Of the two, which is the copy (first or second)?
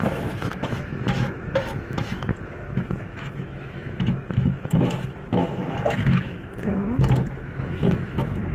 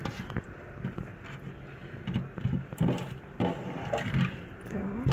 first